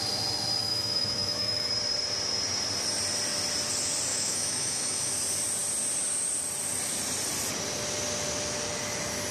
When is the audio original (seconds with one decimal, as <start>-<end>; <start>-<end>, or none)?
0.0-0.6; 1.7-4.1; 5.1-9.3